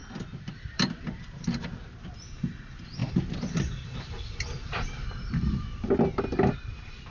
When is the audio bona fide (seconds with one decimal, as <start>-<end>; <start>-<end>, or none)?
2.2-3.0; 5.9-7.1